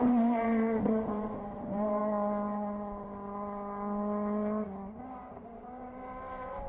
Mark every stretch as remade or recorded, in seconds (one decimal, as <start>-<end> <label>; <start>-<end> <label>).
0.0-2.0 remade; 2.0-5.3 recorded; 5.3-6.7 remade